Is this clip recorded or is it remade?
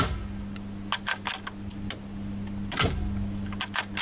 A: recorded